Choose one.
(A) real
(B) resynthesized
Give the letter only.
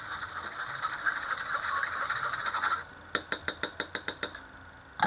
A